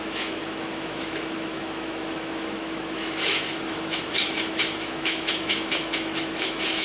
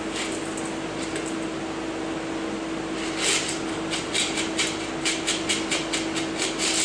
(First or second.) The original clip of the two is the second